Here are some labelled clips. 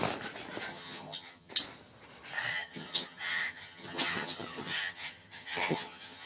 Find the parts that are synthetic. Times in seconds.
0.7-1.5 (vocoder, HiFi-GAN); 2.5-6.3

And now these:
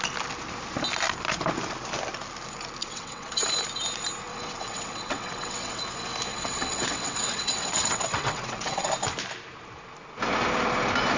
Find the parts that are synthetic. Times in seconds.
2.8-3.5 (vocoder, WaveNeXt); 4.3-5.8; 6.3-8.9

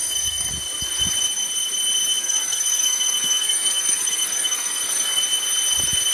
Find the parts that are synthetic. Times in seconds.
0.0-0.5 (codec, SNAC); 2.2-5.2

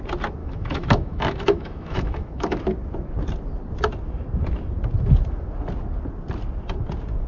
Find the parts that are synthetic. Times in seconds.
0.4-2.6 (autoencoder, DAC-VAE)

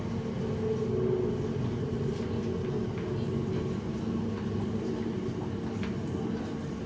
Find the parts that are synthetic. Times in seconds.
none

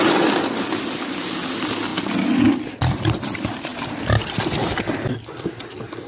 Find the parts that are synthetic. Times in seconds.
none